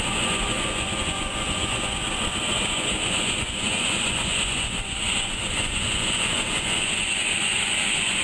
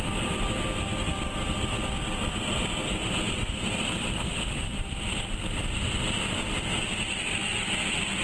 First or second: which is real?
second